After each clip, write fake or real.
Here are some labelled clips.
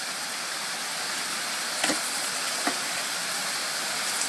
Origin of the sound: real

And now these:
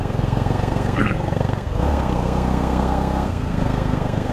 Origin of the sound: fake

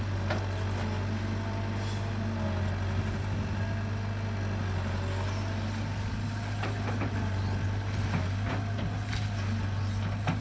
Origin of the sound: real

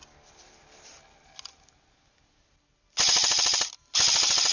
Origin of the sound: real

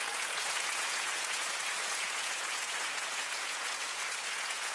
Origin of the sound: fake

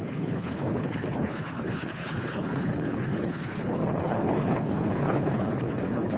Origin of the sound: fake